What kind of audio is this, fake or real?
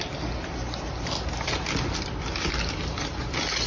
real